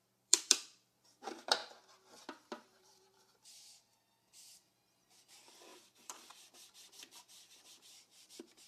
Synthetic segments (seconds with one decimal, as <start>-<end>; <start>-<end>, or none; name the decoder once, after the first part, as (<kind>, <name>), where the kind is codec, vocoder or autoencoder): 0.0-1.6 (vocoder, BigVGAN v2); 2.8-8.7